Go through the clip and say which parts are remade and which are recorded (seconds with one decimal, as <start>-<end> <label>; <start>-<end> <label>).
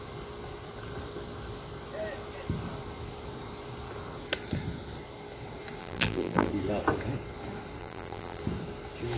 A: 0.0-5.8 recorded; 5.8-6.5 remade; 6.5-7.8 recorded; 7.8-8.4 remade; 8.4-9.2 recorded